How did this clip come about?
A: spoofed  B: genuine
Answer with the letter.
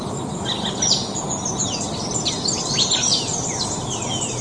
B